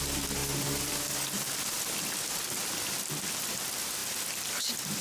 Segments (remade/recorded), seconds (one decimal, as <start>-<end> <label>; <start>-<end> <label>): 0.0-5.0 recorded